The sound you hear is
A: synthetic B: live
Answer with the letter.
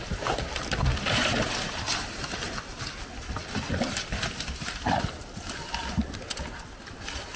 B